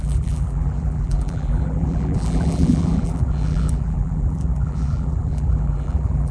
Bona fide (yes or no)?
no